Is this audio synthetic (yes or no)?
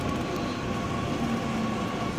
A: no